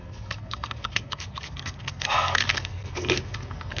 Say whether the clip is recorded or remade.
remade